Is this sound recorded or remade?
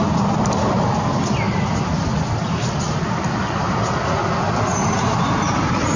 recorded